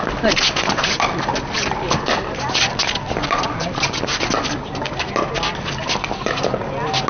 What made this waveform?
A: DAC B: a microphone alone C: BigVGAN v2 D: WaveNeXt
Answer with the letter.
B